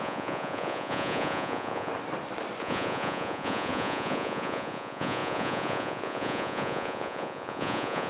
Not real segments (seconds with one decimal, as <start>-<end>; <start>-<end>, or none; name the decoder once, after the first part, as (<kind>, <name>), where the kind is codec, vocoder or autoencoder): 0.0-1.9 (vocoder, Vocos); 2.6-8.1